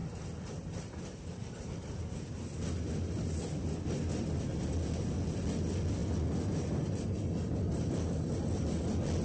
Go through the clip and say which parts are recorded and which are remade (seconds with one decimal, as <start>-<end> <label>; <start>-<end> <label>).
0.0-9.2 recorded